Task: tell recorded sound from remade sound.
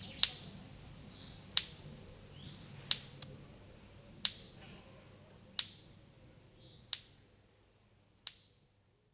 recorded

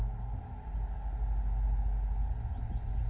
recorded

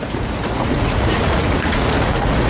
remade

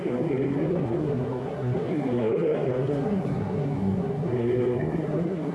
remade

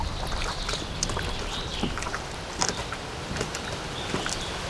recorded